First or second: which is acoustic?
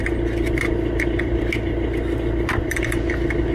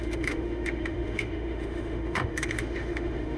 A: first